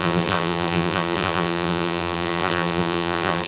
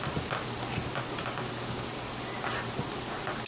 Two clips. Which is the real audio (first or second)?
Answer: second